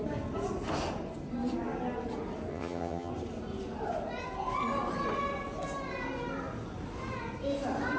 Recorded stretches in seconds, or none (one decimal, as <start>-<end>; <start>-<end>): 0.0-2.5; 3.1-8.0